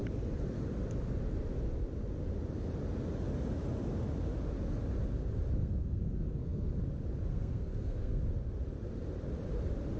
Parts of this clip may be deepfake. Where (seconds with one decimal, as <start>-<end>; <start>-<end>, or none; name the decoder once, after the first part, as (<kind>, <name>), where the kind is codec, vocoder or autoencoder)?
5.6-6.7 (codec, SNAC); 7.3-8.2